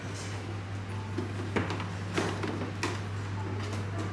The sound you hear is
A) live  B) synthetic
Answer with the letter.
A